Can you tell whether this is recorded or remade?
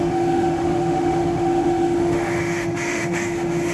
remade